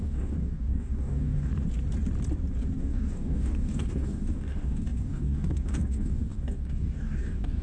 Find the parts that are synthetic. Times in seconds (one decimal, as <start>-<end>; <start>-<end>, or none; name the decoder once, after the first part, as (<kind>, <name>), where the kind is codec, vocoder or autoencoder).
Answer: 0.0-1.5 (codec, DAC); 2.8-7.6